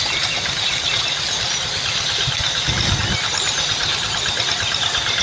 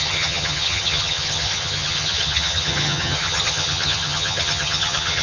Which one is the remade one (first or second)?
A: second